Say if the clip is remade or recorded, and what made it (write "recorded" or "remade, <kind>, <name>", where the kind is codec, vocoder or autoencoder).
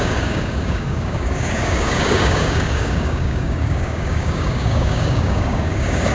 remade, codec, DAC